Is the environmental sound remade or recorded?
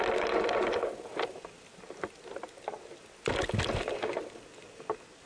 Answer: recorded